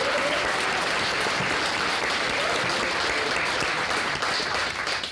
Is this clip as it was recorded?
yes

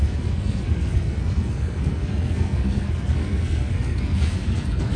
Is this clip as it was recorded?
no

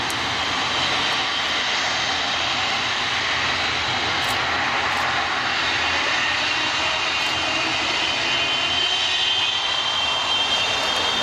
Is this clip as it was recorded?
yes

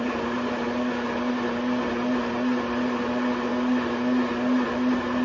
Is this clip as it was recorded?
yes